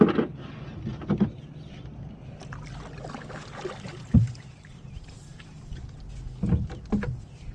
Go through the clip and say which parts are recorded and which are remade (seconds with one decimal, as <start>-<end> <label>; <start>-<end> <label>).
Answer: 0.0-3.9 recorded; 3.9-6.0 remade; 6.0-7.5 recorded